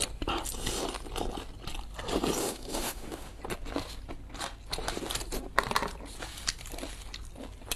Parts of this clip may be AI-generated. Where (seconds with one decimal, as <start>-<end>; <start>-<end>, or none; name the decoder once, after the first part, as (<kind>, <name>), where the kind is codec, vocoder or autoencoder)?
2.4-3.4 (autoencoder, DAC-VAE)